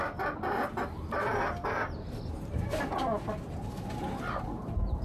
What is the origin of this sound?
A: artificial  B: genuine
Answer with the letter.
B